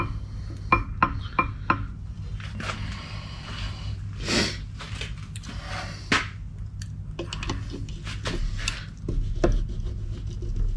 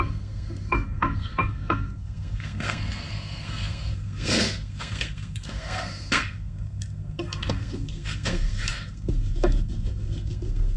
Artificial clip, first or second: second